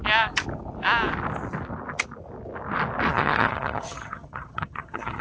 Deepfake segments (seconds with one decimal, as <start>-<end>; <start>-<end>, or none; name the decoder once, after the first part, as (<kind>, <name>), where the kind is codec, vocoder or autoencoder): 3.1-5.2 (vocoder, HiFi-GAN)